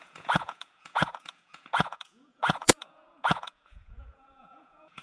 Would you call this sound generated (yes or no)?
yes